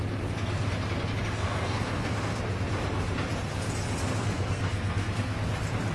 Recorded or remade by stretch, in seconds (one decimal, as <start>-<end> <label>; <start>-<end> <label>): 0.0-1.4 recorded; 1.4-2.4 remade; 2.4-4.0 recorded; 4.0-5.4 remade; 5.4-5.9 recorded